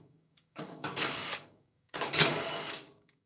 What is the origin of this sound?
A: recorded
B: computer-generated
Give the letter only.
B